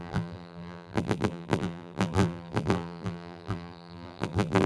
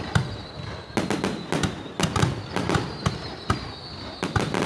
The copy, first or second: first